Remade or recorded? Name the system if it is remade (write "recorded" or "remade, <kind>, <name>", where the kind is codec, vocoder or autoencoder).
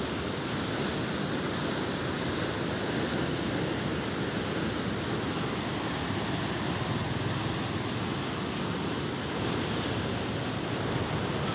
recorded